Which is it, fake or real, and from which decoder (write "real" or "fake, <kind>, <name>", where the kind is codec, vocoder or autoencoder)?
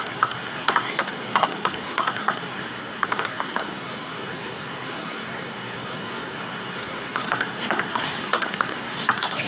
fake, codec, SNAC